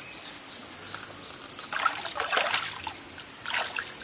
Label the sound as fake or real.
real